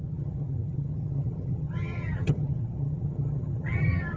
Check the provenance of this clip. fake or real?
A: fake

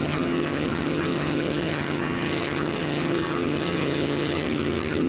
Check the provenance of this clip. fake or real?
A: fake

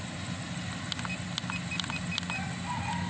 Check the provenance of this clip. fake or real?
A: real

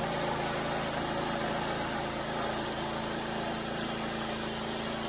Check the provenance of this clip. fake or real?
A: real